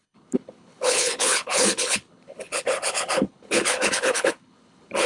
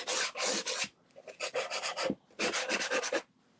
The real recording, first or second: second